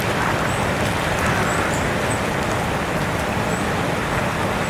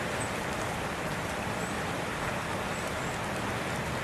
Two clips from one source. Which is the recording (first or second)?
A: first